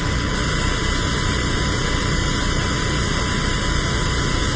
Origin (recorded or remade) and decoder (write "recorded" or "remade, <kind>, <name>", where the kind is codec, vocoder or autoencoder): recorded